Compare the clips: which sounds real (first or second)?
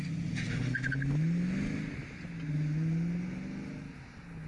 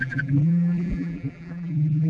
first